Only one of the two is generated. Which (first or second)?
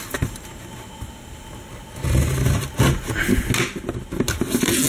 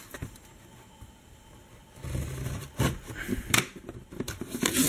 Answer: second